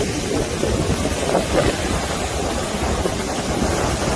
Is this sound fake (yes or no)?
no